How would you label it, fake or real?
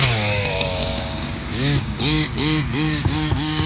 fake